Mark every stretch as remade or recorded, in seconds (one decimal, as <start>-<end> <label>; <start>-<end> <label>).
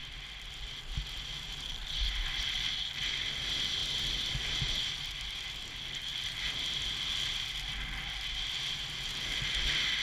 0.0-6.1 recorded; 6.1-7.1 remade; 7.1-10.0 recorded